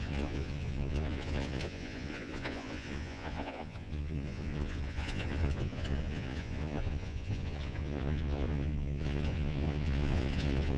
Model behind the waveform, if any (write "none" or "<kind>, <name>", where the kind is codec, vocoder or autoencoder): vocoder, Vocos